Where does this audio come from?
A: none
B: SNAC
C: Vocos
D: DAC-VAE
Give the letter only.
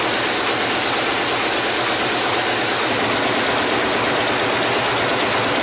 A